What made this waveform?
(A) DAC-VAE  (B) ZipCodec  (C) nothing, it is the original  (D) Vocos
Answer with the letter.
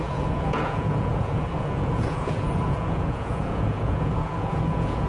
D